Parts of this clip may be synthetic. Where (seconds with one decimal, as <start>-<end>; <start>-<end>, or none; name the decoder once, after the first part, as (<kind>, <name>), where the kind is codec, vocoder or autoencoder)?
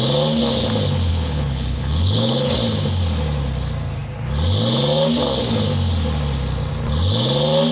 1.1-2.5 (codec, HILCodec)